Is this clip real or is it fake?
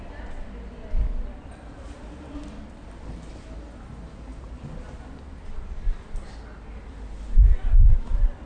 real